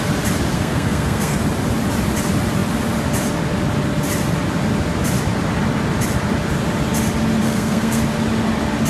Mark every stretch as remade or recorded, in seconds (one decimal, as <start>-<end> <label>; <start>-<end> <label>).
0.0-0.5 recorded; 0.5-1.4 remade; 1.4-7.4 recorded; 7.4-8.0 remade; 8.0-8.9 recorded